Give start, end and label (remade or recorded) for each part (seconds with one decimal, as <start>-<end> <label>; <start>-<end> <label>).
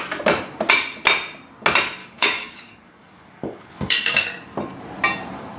0.0-2.0 recorded; 2.0-4.3 remade; 4.3-5.6 recorded